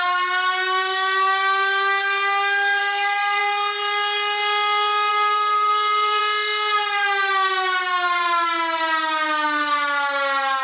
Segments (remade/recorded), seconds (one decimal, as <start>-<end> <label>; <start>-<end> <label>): 0.0-2.8 recorded; 2.8-3.4 remade; 3.4-5.1 recorded; 5.1-6.2 remade; 6.2-10.6 recorded